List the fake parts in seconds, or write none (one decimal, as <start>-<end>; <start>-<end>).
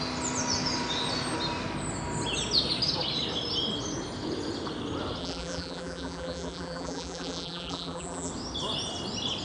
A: 5.2-8.3